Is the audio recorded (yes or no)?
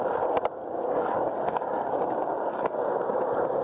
yes